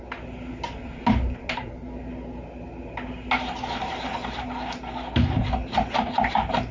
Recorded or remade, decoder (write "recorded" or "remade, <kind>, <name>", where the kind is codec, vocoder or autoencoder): recorded